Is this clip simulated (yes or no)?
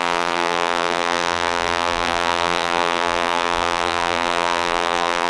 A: yes